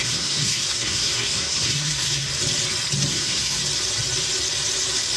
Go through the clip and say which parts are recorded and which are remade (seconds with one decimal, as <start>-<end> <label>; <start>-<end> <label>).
0.0-2.3 remade; 2.3-3.1 recorded; 3.1-3.6 remade; 3.6-5.2 recorded